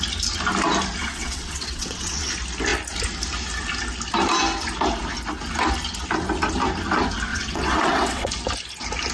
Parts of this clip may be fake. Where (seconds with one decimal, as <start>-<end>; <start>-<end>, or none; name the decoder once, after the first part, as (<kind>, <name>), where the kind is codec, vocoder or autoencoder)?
1.0-2.3 (vocoder, WaveNeXt); 7.3-8.3